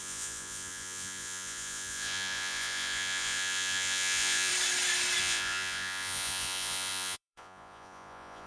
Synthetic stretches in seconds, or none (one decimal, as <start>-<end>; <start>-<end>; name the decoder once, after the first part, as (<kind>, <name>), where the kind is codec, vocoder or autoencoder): 0.0-4.5 (vocoder, Vocos); 5.2-8.5